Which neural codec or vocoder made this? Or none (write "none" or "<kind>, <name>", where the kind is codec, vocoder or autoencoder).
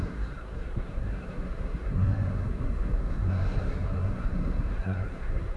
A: codec, SNAC